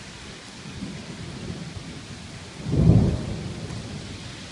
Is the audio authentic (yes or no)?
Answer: yes